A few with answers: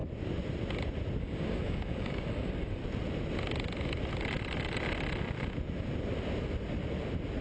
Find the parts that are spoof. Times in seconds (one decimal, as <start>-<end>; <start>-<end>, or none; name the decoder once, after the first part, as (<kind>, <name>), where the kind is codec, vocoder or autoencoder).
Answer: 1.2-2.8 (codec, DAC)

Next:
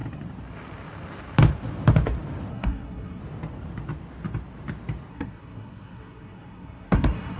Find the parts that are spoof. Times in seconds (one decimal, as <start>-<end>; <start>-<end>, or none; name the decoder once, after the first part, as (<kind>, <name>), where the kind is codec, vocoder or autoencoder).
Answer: 2.5-3.2 (codec, SNAC); 5.1-7.4

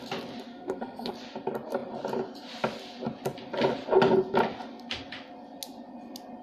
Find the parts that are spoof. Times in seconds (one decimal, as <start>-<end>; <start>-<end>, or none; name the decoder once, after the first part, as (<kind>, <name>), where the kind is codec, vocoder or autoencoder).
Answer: 0.5-1.1 (codec, SNAC)